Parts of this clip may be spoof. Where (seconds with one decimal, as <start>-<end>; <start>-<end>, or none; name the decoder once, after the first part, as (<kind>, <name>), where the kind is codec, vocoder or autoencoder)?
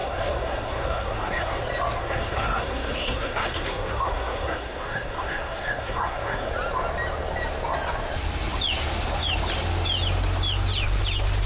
0.0-1.6 (codec, SNAC); 2.0-6.5